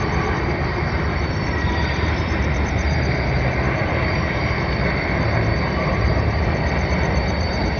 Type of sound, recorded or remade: remade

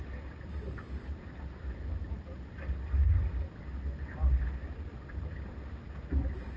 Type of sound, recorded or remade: recorded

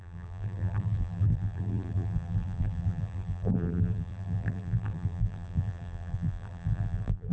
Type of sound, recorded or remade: remade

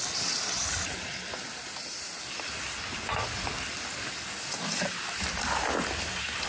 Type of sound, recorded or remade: recorded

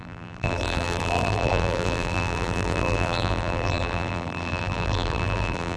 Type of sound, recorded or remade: remade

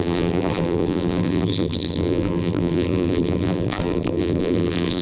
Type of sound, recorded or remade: remade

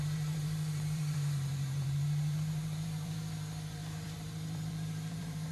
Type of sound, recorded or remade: remade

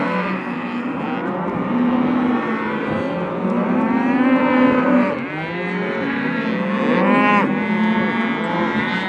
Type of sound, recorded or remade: recorded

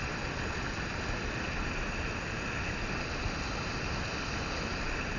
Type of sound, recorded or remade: recorded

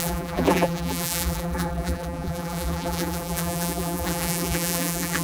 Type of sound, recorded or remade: remade